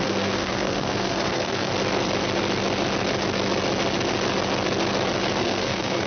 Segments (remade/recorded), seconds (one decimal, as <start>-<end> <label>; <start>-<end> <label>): 0.0-1.7 remade; 1.7-5.4 recorded; 5.4-6.1 remade